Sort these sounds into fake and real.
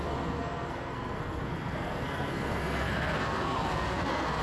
fake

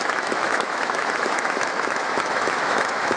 fake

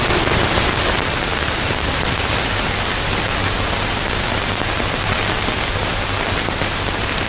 real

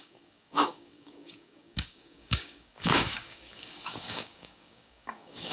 fake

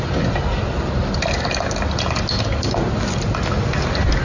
real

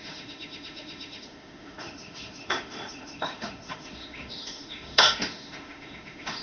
fake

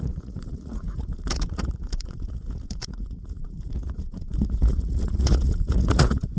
fake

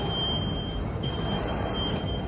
real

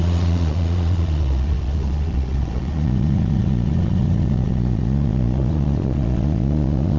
fake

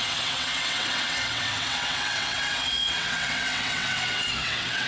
fake